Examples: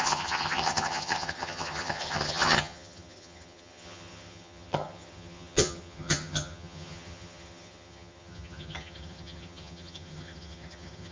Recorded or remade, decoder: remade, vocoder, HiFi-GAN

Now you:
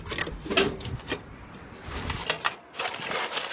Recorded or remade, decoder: recorded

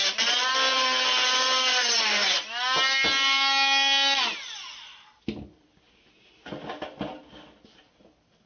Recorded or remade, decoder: recorded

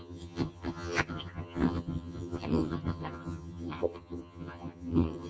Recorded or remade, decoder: remade, vocoder, HiFi-GAN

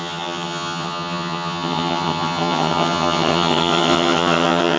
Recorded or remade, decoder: remade, vocoder, HiFi-GAN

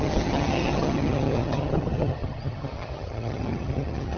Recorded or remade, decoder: remade, vocoder, HiFi-GAN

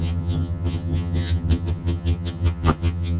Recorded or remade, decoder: remade, vocoder, HiFi-GAN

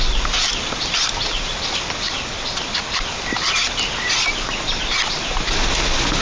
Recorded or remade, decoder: recorded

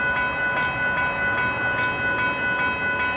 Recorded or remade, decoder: recorded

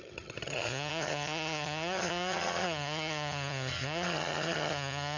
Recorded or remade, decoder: remade, vocoder, HiFi-GAN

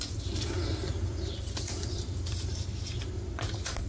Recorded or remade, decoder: recorded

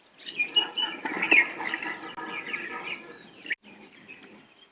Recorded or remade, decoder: recorded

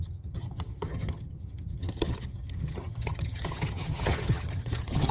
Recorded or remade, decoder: remade, vocoder, HiFi-GAN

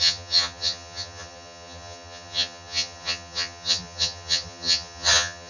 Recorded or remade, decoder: remade, vocoder, HiFi-GAN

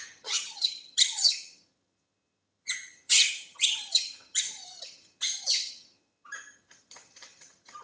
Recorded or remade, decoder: remade, vocoder, HiFi-GAN